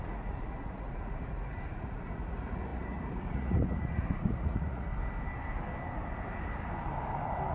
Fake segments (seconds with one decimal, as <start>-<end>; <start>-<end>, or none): 0.0-4.9